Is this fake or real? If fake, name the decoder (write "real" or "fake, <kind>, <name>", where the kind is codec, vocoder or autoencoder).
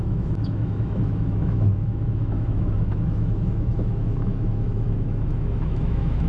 fake, autoencoder, DAC-VAE